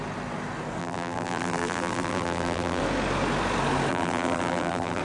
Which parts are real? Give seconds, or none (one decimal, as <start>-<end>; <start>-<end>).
0.0-0.8; 2.8-3.9